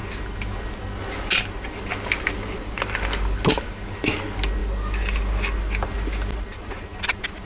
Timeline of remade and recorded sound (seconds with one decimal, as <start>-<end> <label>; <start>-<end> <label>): 0.0-7.5 recorded